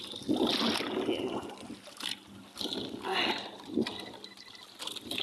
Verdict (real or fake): real